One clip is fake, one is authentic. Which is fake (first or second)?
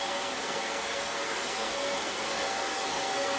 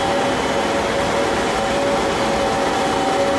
first